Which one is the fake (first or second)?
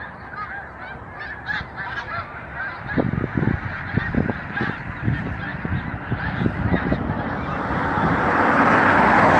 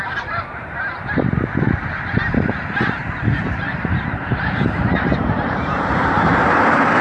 second